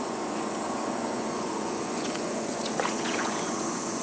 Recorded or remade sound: remade